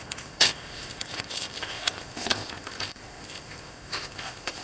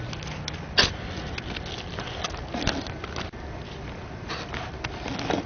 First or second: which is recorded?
second